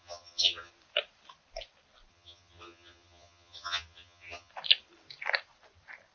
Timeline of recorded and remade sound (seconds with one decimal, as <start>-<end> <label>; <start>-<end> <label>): 0.0-0.7 remade; 0.7-2.1 recorded; 2.1-4.5 remade; 4.5-6.1 recorded